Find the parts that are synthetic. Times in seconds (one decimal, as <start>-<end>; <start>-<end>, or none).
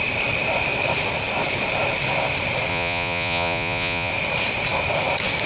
2.7-4.1